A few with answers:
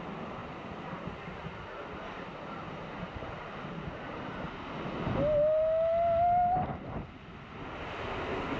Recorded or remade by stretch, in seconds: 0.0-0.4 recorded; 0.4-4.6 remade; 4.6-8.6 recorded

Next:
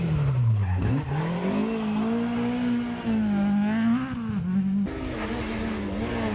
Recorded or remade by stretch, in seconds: 0.0-6.3 recorded

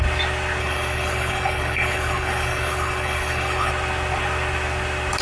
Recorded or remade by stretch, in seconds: 0.0-0.6 recorded; 0.6-3.7 remade; 3.7-5.2 recorded

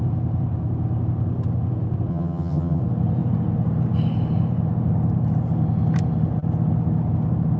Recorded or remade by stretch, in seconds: 0.0-2.1 recorded; 2.1-2.8 remade; 2.8-7.6 recorded

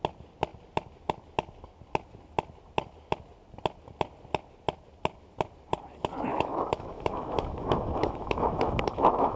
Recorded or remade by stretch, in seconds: 0.0-6.3 recorded; 6.3-9.4 remade